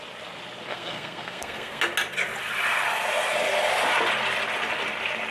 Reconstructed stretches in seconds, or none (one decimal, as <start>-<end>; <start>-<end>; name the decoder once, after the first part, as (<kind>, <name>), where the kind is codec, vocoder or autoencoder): 0.7-1.8 (codec, SNAC)

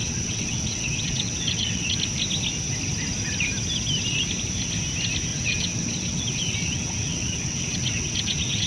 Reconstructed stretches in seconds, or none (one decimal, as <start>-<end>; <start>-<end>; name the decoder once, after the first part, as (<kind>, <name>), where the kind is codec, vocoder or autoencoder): 0.0-2.0 (vocoder, WaveNeXt); 5.3-8.7

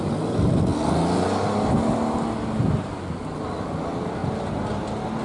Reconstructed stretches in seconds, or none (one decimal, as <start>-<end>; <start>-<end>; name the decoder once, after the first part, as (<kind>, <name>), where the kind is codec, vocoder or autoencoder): none

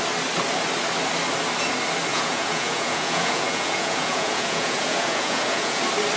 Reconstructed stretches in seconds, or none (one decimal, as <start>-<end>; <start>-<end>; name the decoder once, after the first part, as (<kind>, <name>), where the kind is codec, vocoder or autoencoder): 2.1-5.8 (vocoder, Vocos)

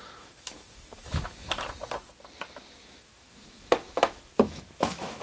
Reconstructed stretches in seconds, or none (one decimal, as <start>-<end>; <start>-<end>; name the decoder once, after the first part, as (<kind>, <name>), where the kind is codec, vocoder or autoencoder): 0.0-1.5 (autoencoder, DAC-VAE); 2.8-5.2